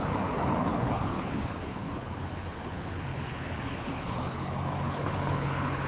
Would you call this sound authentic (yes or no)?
no